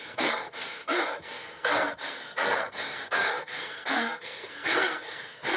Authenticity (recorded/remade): remade